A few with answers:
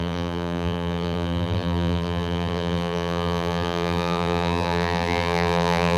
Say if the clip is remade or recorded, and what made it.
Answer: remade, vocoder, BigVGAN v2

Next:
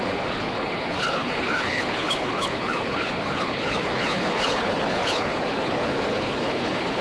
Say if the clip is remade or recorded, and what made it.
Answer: remade, codec, HILCodec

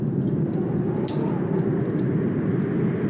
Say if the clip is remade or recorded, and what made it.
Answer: recorded